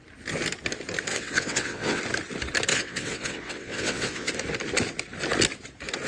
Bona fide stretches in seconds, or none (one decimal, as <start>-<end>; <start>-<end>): 0.0-1.1; 2.0-2.7; 4.3-6.1